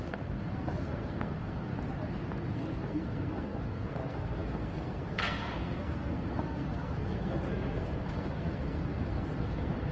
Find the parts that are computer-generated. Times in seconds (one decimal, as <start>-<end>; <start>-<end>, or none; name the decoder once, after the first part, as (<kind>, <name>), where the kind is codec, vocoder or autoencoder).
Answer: 0.0-1.7 (codec, SNAC); 2.5-9.9

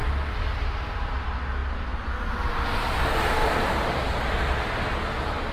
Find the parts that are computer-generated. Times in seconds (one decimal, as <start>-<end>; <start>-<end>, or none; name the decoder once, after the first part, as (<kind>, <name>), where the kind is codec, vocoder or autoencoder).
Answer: 3.4-4.1 (vocoder, BigVGAN v2)